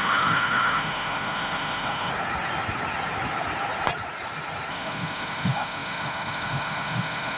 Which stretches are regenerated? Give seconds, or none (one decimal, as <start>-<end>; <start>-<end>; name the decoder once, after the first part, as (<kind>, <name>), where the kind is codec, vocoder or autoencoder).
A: 0.0-2.1 (autoencoder, DAC-VAE); 4.7-7.4